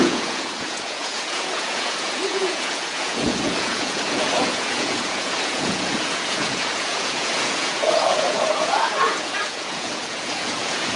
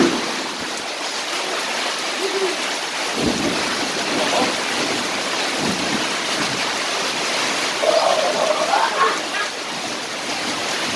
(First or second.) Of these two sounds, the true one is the second